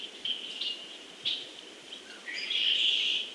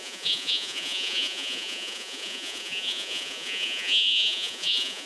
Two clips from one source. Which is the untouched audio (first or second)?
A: first